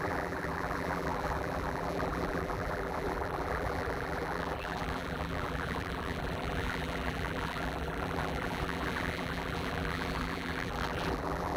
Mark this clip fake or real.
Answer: fake